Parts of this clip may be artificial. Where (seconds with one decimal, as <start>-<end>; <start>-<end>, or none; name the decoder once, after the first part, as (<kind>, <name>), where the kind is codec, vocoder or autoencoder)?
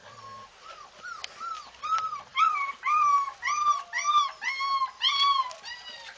none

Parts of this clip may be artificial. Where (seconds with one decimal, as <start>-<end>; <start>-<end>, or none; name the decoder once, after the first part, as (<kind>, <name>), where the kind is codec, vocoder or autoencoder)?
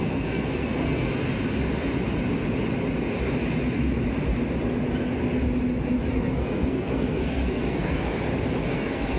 0.0-1.1 (codec, SNAC); 6.1-8.1; 8.7-9.2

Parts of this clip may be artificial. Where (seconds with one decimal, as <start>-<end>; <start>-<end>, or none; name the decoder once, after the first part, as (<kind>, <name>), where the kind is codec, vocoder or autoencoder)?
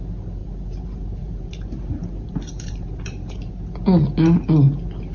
0.4-3.5 (vocoder, BigVGAN v2)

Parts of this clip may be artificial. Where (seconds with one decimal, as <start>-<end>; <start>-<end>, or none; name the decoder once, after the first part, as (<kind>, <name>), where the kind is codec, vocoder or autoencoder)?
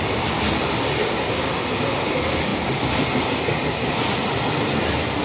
1.0-1.5 (codec, DAC)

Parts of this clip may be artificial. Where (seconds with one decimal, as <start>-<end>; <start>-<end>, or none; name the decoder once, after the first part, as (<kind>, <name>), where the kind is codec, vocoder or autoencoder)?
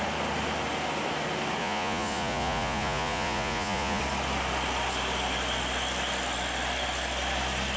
1.6-4.0 (vocoder, Vocos)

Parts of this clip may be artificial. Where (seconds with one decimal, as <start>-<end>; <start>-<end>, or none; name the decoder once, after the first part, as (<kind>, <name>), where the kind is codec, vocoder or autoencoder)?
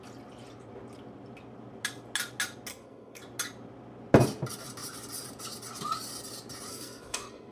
2.7-3.2 (codec, SNAC); 6.7-7.5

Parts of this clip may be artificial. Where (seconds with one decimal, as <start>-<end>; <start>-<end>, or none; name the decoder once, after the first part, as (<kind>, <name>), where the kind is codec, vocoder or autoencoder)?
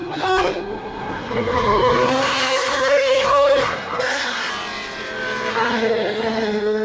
0.0-4.5 (codec, SNAC); 5.5-6.8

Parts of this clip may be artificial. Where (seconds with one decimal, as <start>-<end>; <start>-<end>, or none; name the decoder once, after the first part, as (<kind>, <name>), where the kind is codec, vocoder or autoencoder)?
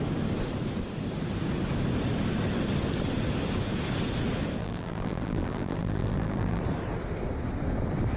4.6-6.6 (vocoder, BigVGAN v2)